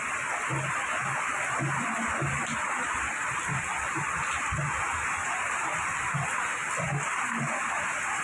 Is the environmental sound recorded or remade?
recorded